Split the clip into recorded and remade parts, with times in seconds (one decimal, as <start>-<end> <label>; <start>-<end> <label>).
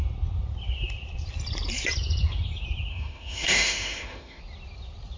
0.0-2.9 recorded; 2.9-4.4 remade; 4.4-5.2 recorded